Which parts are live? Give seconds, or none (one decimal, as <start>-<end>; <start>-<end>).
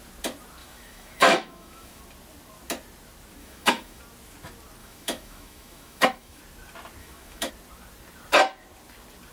0.0-0.6; 2.0-3.4; 4.0-4.8; 6.4-7.0; 7.5-9.3